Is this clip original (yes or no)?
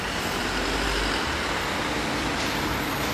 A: yes